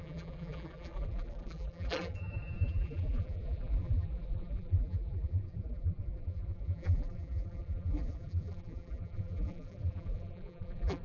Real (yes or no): no